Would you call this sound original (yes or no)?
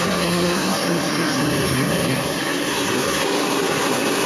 no